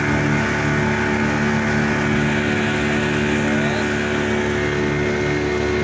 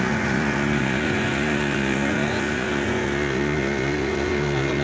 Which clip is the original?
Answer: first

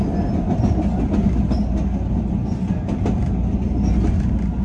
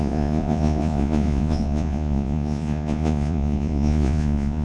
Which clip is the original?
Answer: first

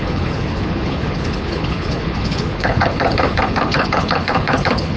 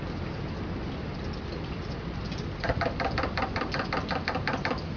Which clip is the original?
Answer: second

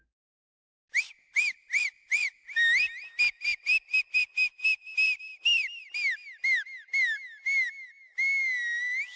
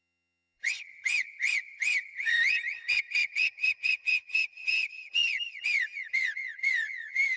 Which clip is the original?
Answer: first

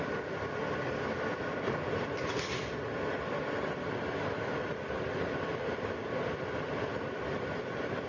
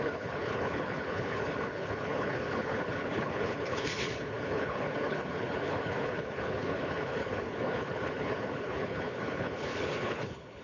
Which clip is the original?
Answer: first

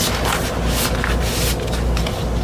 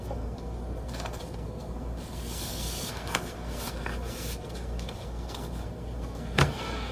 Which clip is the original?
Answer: first